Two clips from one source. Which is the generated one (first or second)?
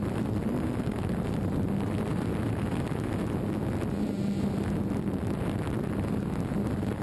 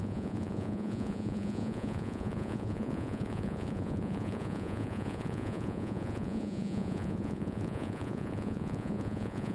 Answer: second